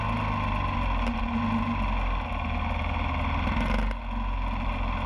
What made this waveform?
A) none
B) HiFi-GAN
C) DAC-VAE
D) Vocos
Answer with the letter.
A